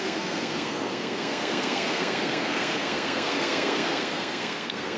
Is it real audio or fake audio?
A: fake